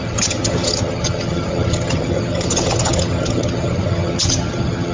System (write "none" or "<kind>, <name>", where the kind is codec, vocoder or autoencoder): vocoder, HiFi-GAN